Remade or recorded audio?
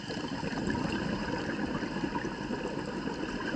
recorded